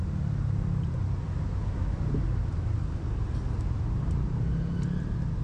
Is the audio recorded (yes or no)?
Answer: yes